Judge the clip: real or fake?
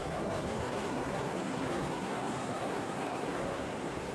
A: fake